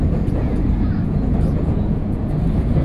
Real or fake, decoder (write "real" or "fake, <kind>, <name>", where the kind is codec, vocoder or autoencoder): fake, vocoder, Vocos